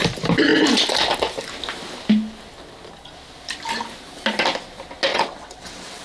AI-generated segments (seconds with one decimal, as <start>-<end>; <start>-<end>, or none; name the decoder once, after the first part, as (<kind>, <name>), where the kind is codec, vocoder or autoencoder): 5.1-6.0 (vocoder, WaveNeXt)